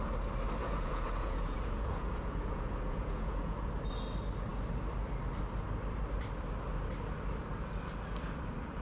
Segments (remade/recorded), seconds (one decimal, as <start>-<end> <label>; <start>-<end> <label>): 0.0-0.6 recorded; 0.6-3.7 remade; 3.7-8.8 recorded